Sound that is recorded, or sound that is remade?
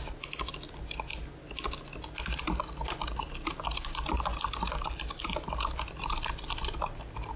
recorded